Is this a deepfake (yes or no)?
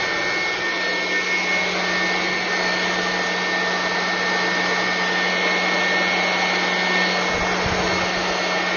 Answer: no